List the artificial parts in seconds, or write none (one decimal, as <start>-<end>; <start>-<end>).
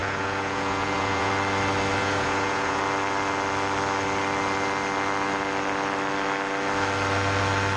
0.0-1.3; 2.0-2.8